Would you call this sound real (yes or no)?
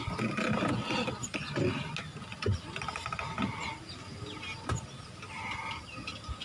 yes